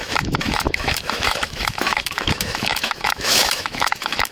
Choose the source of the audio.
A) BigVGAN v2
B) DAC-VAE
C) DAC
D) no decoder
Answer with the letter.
B